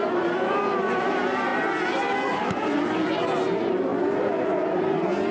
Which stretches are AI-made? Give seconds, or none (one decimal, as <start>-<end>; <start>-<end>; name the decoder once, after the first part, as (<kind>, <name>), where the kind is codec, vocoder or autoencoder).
0.0-1.5 (vocoder, BigVGAN v2); 2.3-3.9